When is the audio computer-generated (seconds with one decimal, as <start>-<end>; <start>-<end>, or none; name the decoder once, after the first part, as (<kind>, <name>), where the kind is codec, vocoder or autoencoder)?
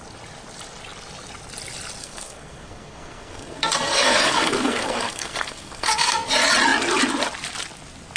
2.0-6.3 (codec, SNAC)